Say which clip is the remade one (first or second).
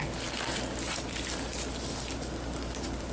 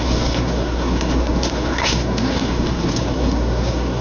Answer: second